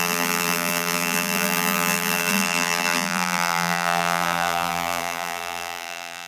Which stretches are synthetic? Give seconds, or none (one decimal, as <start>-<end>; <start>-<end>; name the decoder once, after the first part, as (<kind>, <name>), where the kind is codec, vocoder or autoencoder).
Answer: 0.0-6.3 (vocoder, BigVGAN v2)